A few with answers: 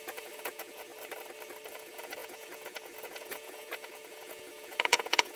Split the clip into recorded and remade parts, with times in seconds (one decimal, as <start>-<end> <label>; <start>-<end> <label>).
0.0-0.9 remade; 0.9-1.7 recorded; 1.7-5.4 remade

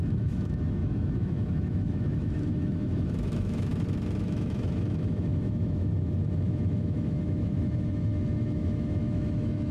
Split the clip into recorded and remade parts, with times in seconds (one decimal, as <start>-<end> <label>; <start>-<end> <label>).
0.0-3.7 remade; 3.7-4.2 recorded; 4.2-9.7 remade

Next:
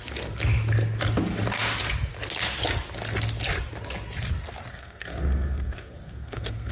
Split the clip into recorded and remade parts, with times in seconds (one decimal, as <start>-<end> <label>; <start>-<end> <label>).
0.0-4.7 recorded; 4.7-6.7 remade

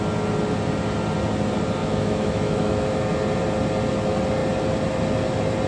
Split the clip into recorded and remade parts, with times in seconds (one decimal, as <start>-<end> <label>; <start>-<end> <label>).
0.0-1.8 recorded; 1.8-3.1 remade; 3.1-5.7 recorded